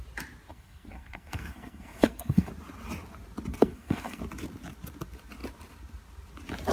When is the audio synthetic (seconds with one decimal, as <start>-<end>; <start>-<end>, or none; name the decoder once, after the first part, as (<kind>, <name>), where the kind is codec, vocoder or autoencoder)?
0.5-2.5 (codec, SNAC); 3.5-4.2